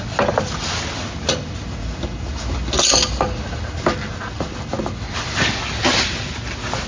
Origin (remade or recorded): recorded